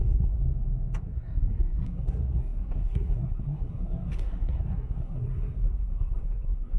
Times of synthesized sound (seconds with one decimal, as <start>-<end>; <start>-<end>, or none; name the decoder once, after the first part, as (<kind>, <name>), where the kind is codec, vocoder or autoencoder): 0.0-0.4 (codec, SNAC); 1.0-6.8

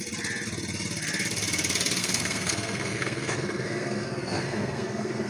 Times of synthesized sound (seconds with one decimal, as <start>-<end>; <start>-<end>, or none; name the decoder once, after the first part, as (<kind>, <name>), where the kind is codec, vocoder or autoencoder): 2.0-5.3 (codec, SNAC)

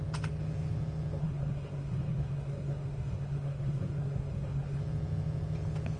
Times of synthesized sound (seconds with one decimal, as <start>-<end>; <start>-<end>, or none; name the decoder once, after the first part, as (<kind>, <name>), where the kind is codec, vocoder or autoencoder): 1.2-4.8 (codec, SNAC)

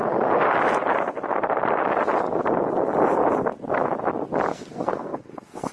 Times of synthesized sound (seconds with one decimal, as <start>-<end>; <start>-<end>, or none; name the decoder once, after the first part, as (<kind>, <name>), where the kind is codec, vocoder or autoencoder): 4.5-5.7 (codec, SNAC)

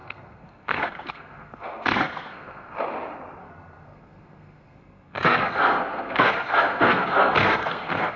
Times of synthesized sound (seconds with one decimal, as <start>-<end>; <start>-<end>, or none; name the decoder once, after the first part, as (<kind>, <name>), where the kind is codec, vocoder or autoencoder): 0.0-2.7 (codec, SNAC); 3.4-8.2

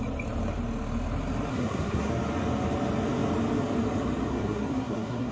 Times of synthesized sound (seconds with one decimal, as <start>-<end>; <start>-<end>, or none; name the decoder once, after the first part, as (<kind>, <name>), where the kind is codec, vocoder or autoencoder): 1.5-2.1 (codec, SNAC); 4.3-5.3

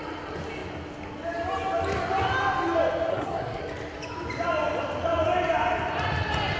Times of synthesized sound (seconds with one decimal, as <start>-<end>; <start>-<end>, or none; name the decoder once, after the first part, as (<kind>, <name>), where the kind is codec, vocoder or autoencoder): 3.1-3.6 (codec, SNAC)

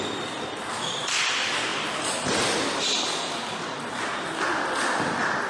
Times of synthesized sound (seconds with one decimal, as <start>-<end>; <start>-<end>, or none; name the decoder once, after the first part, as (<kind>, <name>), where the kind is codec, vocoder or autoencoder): none